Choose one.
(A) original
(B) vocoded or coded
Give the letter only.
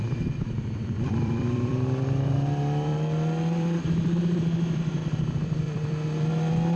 B